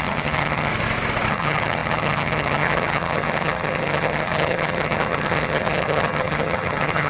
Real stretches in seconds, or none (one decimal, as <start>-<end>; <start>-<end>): 0.7-1.3